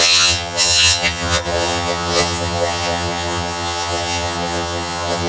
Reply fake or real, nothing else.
fake